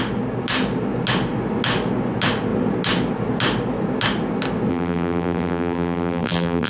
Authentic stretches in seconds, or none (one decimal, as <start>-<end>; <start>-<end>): 0.0-4.7